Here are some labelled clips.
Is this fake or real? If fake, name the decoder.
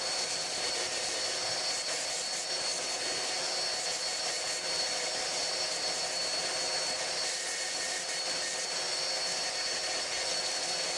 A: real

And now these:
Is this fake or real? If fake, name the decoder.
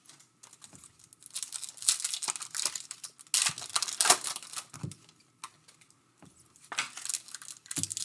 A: real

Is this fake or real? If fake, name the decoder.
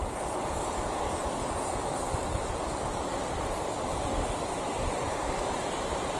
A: real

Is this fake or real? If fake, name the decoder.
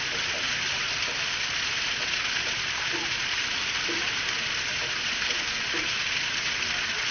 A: real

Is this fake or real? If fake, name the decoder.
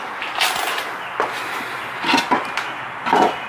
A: real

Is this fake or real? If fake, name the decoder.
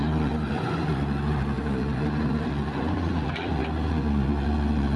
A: fake, vocoder, Vocos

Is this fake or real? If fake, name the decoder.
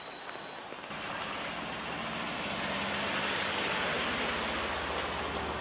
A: real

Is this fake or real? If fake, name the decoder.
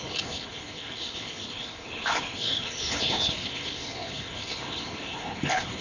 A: fake, codec, HILCodec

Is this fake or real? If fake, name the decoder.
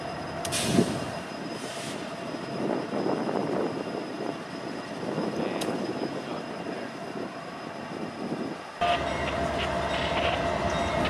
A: real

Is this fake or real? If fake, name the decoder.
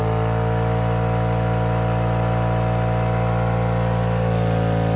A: real